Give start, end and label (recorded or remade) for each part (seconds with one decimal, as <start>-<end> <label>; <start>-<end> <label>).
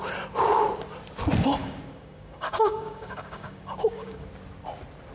0.0-1.6 recorded; 1.6-4.3 remade; 4.3-5.1 recorded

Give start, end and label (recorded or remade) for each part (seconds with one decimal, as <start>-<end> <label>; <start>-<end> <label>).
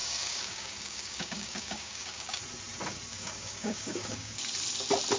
0.0-2.4 remade; 2.4-3.1 recorded; 3.1-4.4 remade; 4.4-5.2 recorded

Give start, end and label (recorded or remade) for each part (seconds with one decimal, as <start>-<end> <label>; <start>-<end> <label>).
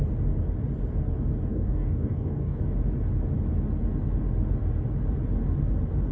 0.0-1.5 recorded; 1.5-2.6 remade; 2.6-6.1 recorded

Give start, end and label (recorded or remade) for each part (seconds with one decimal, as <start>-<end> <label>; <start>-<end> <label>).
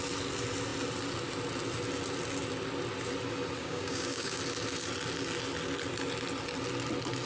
0.0-3.6 recorded; 3.6-4.4 remade; 4.4-7.3 recorded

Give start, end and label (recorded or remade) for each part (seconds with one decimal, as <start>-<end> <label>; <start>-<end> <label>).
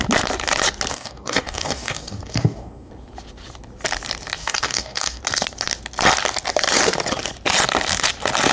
0.0-0.9 recorded; 0.9-2.9 remade; 2.9-4.4 recorded; 4.4-5.2 remade; 5.2-8.5 recorded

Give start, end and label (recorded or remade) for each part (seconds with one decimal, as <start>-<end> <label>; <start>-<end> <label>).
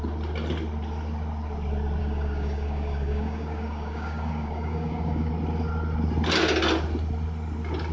0.0-2.0 recorded; 2.0-5.3 remade; 5.3-7.9 recorded